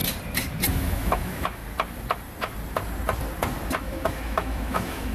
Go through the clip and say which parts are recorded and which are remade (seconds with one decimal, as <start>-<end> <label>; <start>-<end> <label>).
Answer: 0.0-0.7 recorded; 0.7-1.6 remade; 1.6-3.8 recorded; 3.8-5.1 remade

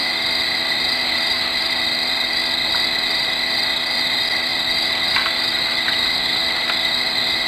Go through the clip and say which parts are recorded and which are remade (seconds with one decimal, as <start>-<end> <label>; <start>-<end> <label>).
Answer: 0.0-7.5 recorded

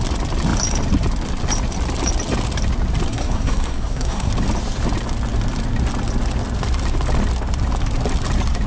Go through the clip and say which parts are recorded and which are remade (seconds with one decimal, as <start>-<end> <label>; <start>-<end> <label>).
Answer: 0.0-3.1 recorded; 3.1-4.3 remade; 4.3-8.7 recorded